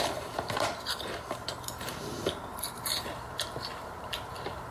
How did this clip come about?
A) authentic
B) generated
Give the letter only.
B